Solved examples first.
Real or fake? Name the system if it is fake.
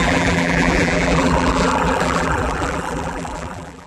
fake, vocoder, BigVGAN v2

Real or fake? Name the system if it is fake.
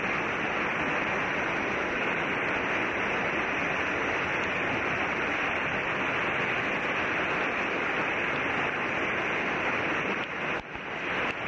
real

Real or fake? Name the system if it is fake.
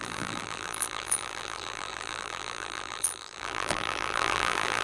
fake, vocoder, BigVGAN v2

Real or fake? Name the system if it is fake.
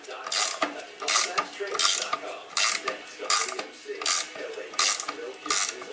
real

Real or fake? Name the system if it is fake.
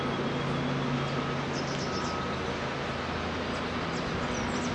real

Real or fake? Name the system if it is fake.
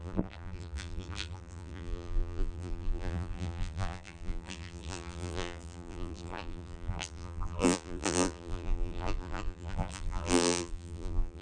fake, vocoder, BigVGAN v2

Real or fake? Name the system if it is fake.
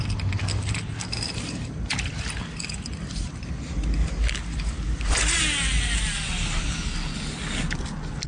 real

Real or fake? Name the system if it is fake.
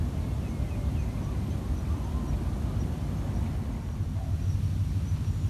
real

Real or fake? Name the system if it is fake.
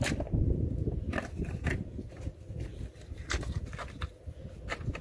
fake, vocoder, BigVGAN v2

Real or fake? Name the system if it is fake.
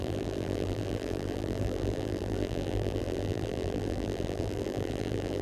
fake, vocoder, BigVGAN v2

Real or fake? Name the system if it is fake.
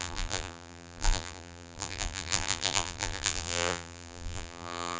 fake, vocoder, BigVGAN v2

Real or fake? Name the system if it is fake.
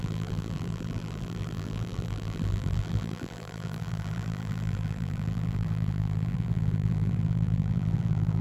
fake, vocoder, BigVGAN v2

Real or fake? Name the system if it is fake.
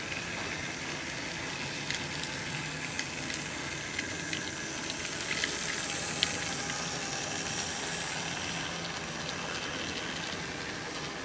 real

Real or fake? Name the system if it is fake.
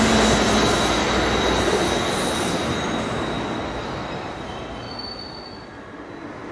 real